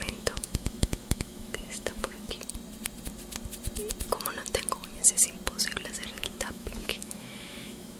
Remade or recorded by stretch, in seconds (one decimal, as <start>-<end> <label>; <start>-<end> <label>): 0.0-2.3 remade; 2.3-6.1 recorded; 6.1-8.0 remade